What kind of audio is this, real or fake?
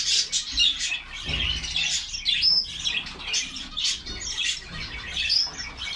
real